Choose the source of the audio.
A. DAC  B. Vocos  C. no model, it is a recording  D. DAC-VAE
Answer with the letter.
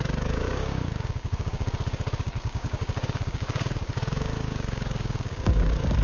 A